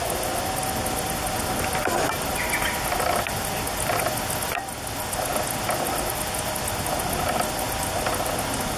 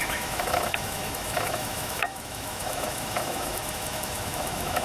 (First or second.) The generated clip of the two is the second